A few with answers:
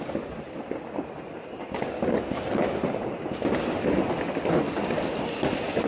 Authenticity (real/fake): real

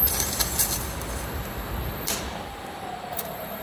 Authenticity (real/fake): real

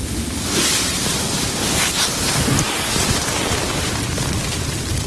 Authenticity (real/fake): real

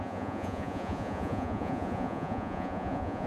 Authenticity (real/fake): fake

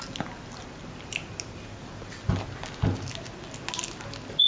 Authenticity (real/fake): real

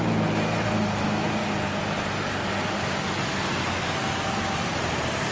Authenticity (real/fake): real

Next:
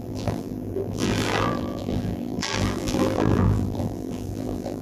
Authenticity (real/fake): fake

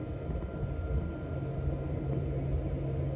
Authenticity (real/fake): real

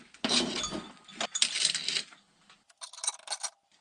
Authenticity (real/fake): real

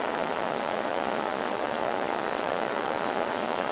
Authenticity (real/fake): fake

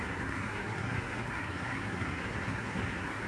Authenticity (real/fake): fake